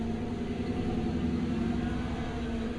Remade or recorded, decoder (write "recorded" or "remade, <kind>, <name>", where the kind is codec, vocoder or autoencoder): recorded